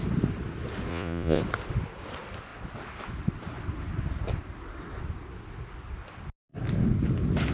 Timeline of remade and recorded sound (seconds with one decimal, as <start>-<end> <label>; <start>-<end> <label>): 0.0-0.9 recorded; 0.9-1.4 remade; 1.4-7.5 recorded